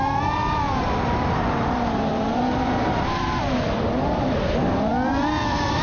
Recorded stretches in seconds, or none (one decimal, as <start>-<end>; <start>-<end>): 4.9-5.8